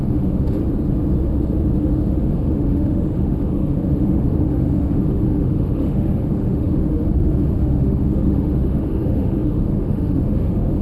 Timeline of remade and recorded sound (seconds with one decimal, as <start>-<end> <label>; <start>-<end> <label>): 0.0-0.6 remade; 0.6-1.8 recorded; 1.8-10.8 remade